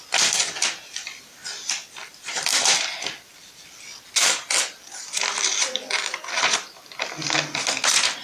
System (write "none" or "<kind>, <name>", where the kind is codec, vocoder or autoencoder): none